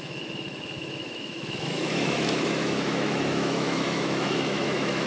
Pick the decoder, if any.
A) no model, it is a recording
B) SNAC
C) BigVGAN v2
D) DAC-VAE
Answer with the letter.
D